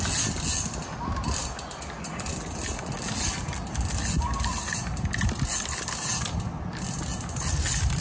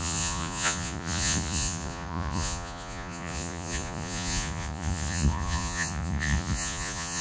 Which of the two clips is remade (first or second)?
second